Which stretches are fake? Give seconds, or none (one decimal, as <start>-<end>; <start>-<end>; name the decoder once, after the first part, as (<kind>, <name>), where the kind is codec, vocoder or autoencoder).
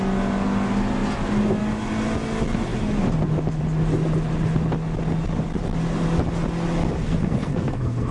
7.0-8.1 (codec, SNAC)